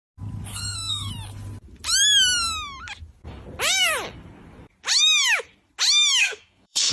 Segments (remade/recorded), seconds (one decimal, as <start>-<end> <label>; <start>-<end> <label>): 0.0-0.5 recorded; 0.5-1.1 remade; 1.1-6.2 recorded; 6.2-6.9 remade